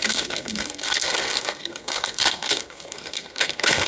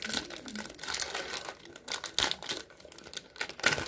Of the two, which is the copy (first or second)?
first